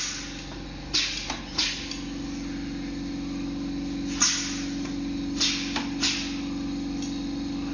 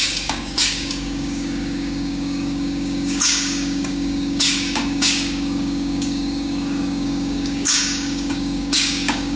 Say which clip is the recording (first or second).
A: first